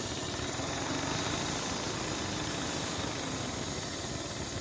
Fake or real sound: real